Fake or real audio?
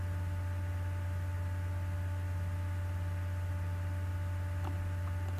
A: real